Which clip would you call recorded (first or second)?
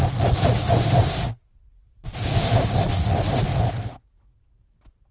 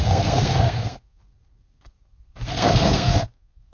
first